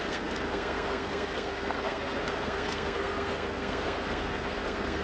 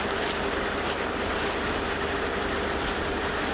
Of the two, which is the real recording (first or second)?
second